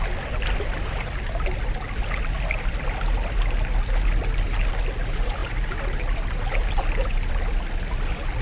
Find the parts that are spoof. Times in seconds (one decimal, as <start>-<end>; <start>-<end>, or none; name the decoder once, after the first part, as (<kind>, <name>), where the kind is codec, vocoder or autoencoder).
none